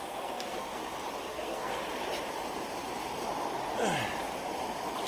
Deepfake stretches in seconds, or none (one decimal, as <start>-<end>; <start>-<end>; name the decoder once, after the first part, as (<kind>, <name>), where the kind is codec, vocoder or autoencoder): 0.0-0.8 (codec, SNAC); 1.3-1.8